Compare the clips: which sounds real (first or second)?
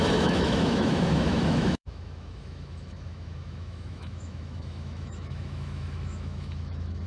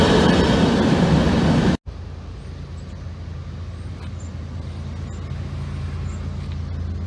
second